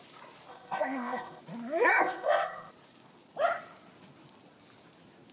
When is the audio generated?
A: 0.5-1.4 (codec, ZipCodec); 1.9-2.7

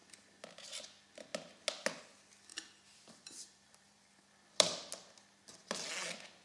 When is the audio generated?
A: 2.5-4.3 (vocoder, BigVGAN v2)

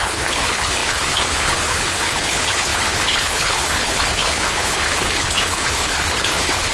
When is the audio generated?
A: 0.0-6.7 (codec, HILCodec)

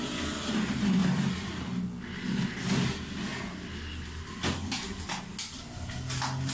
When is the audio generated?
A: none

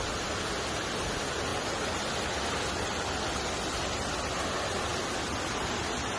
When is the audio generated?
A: none